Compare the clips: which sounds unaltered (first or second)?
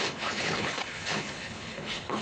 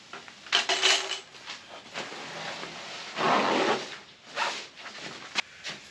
second